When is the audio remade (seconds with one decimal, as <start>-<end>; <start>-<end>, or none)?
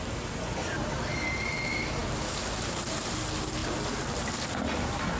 none